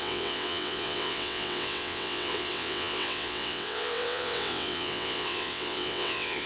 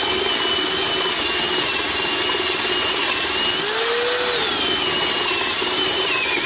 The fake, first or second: first